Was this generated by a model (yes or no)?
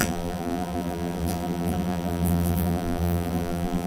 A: yes